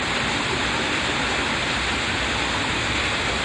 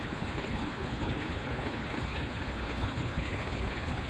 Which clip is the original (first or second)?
first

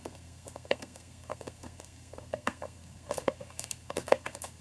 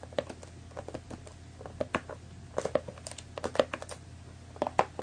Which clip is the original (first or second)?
second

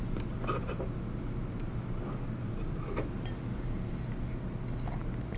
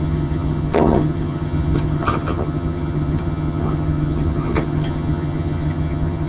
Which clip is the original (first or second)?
first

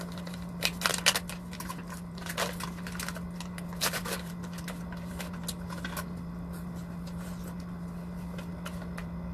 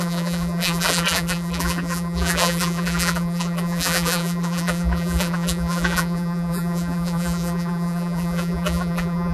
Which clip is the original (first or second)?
first